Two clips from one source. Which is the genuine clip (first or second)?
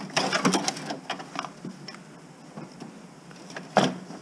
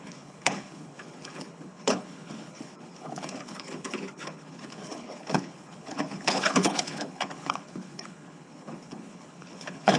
first